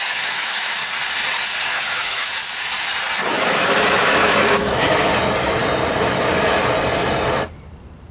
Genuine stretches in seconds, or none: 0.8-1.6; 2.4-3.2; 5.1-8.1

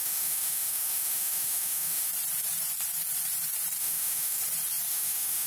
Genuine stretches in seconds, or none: 2.1-3.8; 4.4-4.9